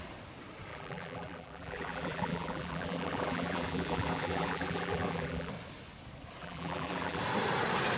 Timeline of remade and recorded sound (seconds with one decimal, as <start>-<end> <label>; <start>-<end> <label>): 0.0-0.7 recorded; 0.7-5.5 remade; 5.5-6.4 recorded; 6.4-7.2 remade; 7.2-8.0 recorded